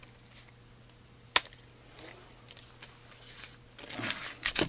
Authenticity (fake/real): real